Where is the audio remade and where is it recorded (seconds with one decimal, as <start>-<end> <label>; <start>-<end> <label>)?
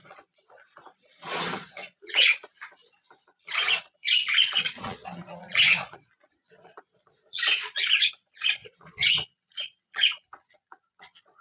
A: 0.0-11.4 remade